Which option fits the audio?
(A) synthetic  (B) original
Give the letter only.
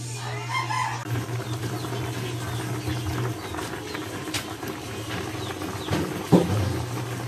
B